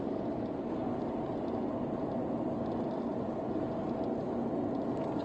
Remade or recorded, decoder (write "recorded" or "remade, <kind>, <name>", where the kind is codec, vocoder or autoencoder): recorded